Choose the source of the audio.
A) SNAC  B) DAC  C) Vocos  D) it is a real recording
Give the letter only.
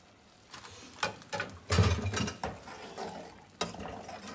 D